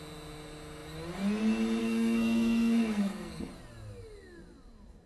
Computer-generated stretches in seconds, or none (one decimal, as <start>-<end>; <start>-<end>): 1.8-3.5